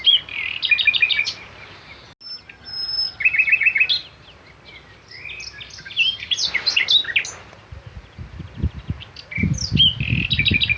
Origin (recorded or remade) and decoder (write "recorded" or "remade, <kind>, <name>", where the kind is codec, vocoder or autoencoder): recorded